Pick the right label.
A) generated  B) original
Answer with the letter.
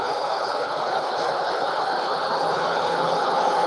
A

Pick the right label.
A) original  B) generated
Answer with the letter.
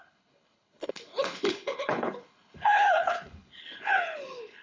B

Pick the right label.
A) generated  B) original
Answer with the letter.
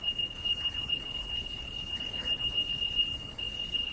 A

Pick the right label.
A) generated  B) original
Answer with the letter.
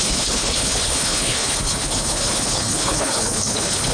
A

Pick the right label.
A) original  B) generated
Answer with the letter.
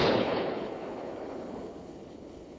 B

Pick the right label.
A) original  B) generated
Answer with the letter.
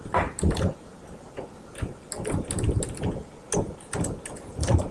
A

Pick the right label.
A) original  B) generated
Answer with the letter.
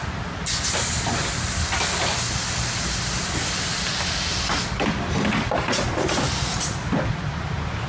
A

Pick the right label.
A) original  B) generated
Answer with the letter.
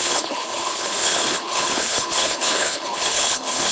B